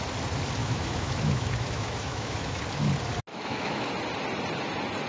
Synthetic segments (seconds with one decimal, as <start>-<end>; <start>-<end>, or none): 0.6-2.6; 3.3-3.9